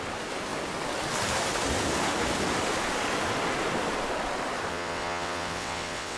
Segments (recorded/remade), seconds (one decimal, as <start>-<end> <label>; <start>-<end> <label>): 0.0-4.7 recorded; 4.7-6.2 remade